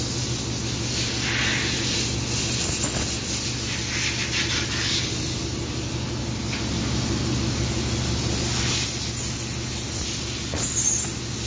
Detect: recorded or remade recorded